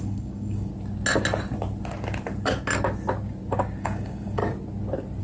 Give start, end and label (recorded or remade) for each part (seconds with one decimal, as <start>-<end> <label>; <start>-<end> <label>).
0.0-0.7 remade; 0.7-3.8 recorded; 3.8-4.4 remade; 4.4-5.2 recorded

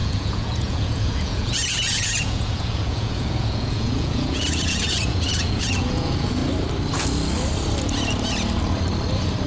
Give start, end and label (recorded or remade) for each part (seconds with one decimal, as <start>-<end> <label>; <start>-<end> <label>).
0.0-6.4 remade; 6.4-9.5 recorded

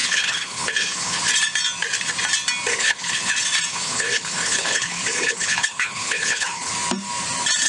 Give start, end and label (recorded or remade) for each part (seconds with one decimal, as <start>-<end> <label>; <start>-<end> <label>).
0.0-1.2 remade; 1.2-2.7 recorded; 2.7-3.3 remade; 3.3-3.7 recorded; 3.7-6.7 remade; 6.7-7.7 recorded

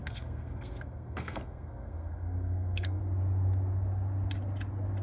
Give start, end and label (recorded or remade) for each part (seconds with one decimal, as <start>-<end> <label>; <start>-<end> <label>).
0.0-3.0 remade; 3.0-5.0 recorded